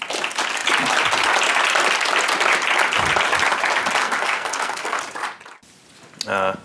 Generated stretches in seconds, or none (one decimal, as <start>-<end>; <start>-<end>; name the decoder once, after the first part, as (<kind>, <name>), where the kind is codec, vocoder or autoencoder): 4.0-5.0 (codec, SNAC)